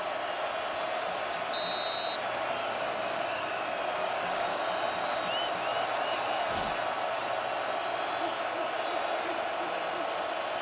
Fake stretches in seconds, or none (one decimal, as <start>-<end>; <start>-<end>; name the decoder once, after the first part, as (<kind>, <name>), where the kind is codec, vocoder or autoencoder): 2.6-3.6 (codec, DAC); 4.0-4.6